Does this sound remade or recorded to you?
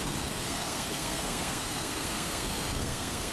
remade